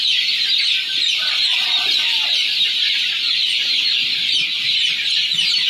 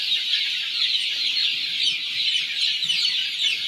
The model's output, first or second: first